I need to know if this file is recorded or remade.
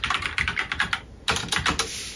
recorded